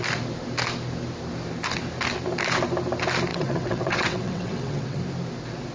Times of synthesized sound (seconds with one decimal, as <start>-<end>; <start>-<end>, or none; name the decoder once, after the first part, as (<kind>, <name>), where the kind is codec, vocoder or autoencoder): 3.3-5.0 (vocoder, WaveNeXt)